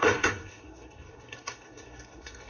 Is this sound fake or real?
fake